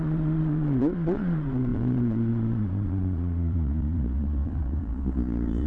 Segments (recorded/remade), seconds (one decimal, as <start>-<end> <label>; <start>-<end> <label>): 0.0-5.7 remade